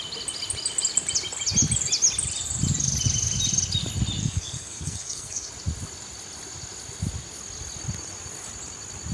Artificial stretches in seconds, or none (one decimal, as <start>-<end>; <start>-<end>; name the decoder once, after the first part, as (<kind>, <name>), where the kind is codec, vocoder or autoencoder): 4.2-5.5 (codec, SNAC)